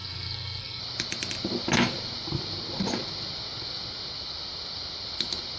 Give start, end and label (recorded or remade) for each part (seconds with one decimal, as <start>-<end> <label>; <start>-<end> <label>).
0.0-0.8 remade; 0.8-5.6 recorded